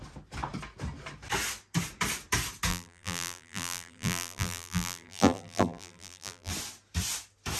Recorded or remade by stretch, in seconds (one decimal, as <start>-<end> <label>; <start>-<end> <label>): 0.0-2.7 recorded; 2.7-6.5 remade; 6.5-7.6 recorded